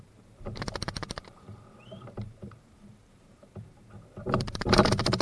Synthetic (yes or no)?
yes